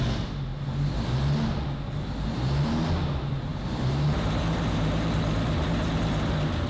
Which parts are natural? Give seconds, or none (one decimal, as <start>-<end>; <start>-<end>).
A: 0.0-3.5; 6.2-6.7